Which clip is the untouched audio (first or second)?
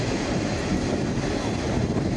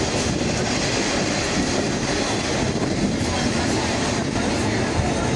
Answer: second